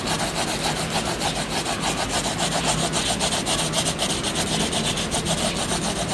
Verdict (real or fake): real